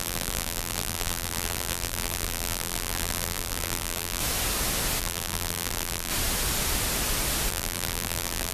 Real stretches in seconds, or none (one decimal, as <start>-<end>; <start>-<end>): 4.2-5.0; 6.1-7.5

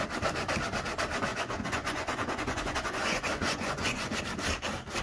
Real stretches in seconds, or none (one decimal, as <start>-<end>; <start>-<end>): 0.0-1.3; 4.2-5.0

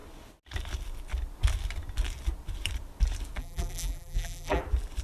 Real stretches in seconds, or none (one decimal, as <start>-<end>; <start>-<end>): 0.0-3.4; 4.6-5.0

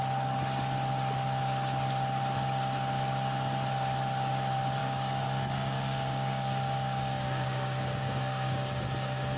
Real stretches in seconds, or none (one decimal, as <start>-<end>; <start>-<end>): 0.0-4.8; 8.8-9.4

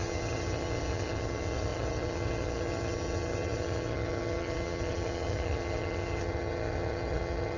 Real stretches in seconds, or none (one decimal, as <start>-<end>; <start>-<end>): none

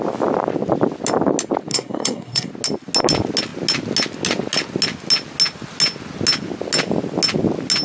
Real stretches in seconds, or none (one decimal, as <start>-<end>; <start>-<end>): 0.0-1.7; 2.5-7.8

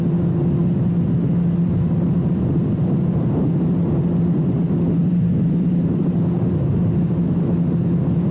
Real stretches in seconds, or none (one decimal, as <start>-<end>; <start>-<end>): 0.0-5.0; 6.7-8.3

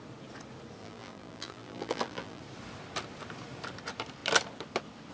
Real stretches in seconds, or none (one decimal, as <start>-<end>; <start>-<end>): 0.0-0.8; 2.4-5.1